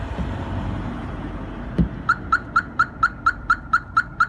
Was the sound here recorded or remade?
recorded